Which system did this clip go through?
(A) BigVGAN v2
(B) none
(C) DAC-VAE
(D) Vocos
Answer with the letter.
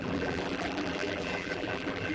A